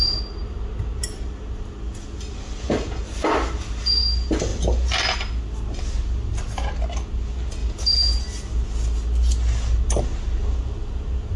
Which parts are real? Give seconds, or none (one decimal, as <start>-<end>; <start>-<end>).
0.0-11.4